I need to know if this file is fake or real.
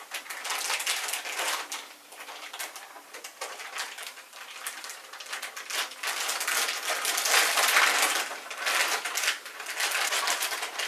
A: fake